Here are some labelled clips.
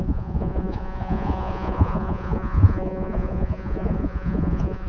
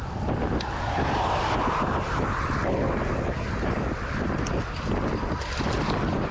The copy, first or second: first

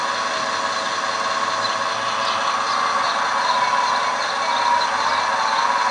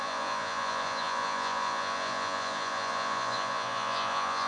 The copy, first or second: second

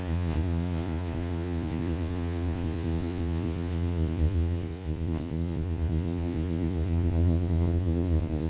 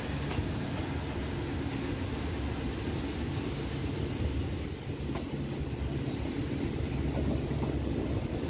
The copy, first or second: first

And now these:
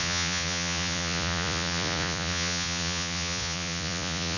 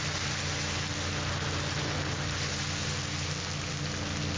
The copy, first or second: first